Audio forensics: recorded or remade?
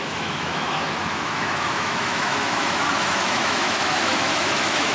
remade